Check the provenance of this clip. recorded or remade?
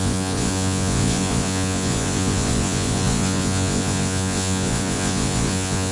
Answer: remade